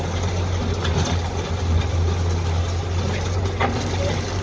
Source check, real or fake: real